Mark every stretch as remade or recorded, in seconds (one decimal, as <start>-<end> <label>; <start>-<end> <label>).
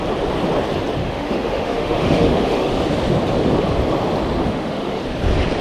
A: 0.0-1.0 recorded; 1.0-2.7 remade; 2.7-4.4 recorded; 4.4-5.0 remade; 5.0-5.6 recorded